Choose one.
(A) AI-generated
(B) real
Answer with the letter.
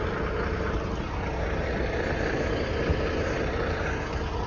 B